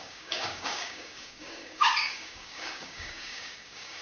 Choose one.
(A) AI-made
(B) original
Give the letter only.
A